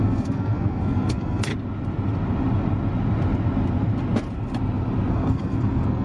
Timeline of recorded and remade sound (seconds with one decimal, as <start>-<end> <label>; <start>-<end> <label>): 0.0-1.5 remade; 1.5-5.1 recorded; 5.1-6.0 remade